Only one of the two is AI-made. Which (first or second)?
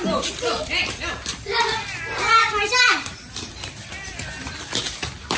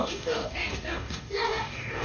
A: second